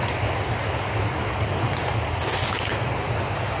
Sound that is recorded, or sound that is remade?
recorded